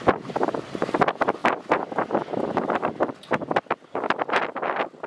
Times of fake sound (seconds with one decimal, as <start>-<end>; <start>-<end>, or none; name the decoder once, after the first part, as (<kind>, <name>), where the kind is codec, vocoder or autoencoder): 1.4-4.5 (vocoder, BigVGAN v2)